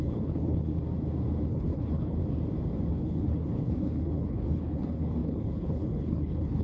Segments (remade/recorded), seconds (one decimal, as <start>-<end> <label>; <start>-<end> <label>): 0.0-0.7 remade; 0.7-1.5 recorded; 1.5-2.2 remade; 2.2-2.9 recorded; 2.9-6.6 remade